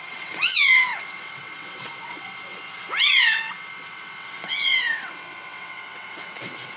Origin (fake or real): fake